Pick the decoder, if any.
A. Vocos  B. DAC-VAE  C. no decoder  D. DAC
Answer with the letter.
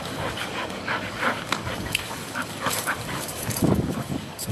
D